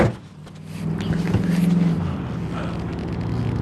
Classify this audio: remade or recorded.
recorded